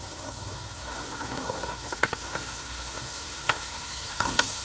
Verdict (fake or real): fake